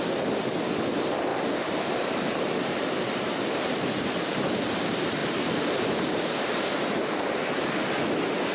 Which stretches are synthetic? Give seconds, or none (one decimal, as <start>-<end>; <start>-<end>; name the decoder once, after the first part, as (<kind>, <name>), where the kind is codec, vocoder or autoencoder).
1.3-4.4 (vocoder, BigVGAN v2); 5.2-7.4